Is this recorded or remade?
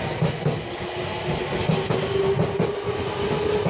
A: recorded